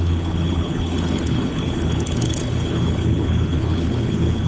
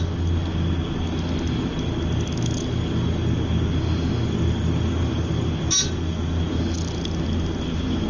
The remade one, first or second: first